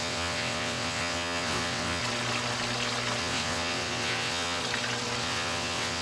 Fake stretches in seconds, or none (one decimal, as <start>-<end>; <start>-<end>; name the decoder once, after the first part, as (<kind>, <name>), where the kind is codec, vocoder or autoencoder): 0.0-2.0 (vocoder, WaveNeXt); 3.2-4.6; 5.2-6.0